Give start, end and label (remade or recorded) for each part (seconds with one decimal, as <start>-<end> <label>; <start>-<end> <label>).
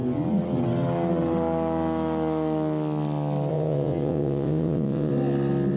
0.0-3.5 recorded; 3.5-5.1 remade; 5.1-5.8 recorded